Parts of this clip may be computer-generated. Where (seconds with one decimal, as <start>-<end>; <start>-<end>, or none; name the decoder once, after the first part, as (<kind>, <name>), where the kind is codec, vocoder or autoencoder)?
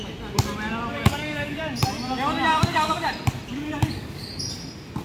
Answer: 0.9-1.6 (codec, DAC); 2.5-3.1; 3.5-4.3